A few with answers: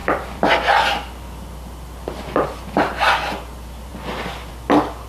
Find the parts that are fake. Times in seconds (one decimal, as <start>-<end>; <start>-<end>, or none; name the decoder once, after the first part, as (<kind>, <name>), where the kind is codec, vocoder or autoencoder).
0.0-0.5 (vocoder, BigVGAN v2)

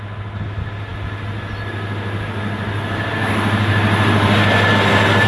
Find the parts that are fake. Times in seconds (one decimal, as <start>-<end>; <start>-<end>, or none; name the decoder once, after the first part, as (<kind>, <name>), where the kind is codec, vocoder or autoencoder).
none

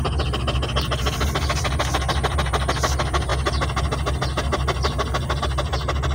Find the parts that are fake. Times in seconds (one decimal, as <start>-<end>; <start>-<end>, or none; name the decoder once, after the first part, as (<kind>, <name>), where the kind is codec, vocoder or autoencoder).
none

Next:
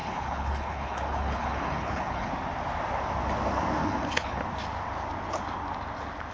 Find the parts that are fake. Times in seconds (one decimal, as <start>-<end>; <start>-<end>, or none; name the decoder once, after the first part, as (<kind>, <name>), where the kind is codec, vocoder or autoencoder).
0.0-2.3 (codec, HILCodec); 3.8-4.4

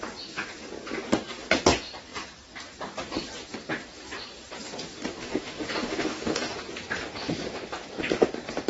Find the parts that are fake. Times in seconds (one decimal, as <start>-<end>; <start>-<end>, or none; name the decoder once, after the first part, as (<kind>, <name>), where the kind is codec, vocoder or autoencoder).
5.2-6.6 (autoencoder, DAC-VAE)

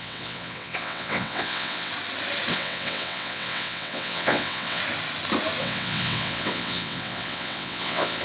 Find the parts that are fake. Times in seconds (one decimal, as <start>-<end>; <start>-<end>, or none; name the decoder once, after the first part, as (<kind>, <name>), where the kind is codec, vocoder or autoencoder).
0.0-1.9 (vocoder, WaveNeXt); 2.5-4.8; 5.6-8.2

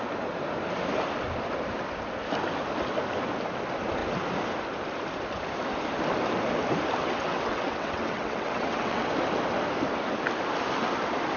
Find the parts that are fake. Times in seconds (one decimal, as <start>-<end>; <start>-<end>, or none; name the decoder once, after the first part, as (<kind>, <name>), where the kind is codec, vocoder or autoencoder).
7.0-9.1 (vocoder, WaveNeXt)

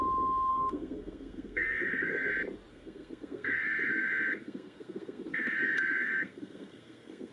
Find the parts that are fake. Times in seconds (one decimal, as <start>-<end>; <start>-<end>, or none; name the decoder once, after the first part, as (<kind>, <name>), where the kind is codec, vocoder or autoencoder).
0.5-2.3 (codec, SNAC); 2.7-7.3